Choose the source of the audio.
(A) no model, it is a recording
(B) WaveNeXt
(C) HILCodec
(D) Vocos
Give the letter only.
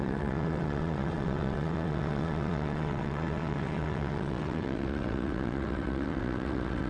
B